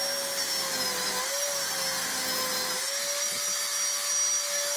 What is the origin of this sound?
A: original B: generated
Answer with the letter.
A